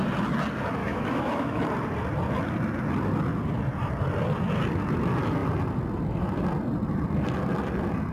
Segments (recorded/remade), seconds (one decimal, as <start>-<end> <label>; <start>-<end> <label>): 0.0-0.8 recorded; 0.8-1.6 remade; 1.6-8.1 recorded